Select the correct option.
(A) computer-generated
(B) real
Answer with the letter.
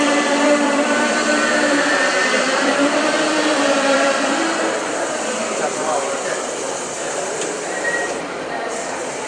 A